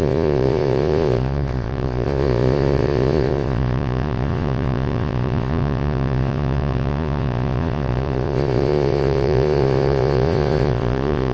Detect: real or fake fake